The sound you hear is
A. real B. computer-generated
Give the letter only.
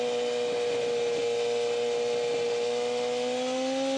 A